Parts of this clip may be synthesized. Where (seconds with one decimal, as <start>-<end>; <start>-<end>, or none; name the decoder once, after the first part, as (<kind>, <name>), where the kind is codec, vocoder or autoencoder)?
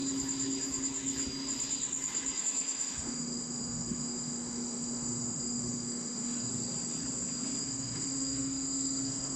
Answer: 2.4-6.5 (autoencoder, DAC-VAE); 7.6-9.4